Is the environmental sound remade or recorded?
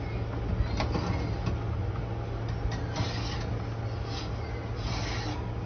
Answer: recorded